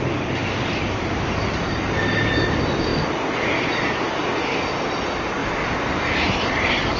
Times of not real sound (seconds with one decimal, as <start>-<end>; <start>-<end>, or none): none